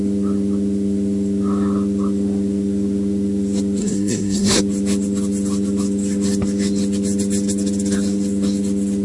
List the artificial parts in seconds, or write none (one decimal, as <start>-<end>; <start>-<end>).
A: 3.8-4.6

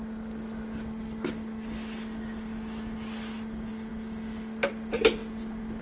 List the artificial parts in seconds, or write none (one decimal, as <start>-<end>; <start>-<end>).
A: none

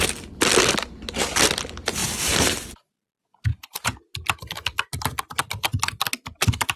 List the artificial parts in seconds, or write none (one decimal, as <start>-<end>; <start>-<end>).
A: 3.5-4.0

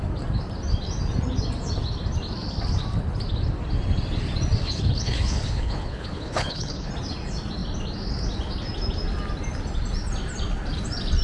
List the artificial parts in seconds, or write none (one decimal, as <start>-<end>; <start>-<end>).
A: 4.6-6.9

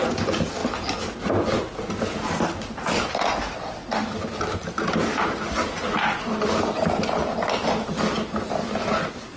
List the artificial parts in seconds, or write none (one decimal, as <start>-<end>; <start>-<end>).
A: none

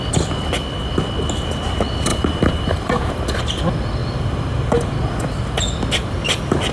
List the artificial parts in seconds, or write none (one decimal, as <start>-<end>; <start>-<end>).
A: 2.1-3.1; 4.0-4.9

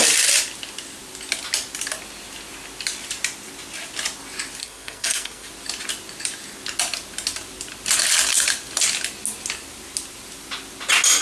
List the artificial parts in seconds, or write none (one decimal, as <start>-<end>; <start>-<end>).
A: 4.6-5.5

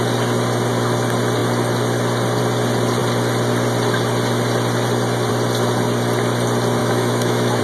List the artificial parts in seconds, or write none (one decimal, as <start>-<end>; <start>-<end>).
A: 6.8-7.6